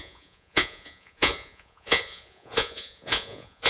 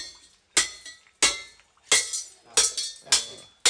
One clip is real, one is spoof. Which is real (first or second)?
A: second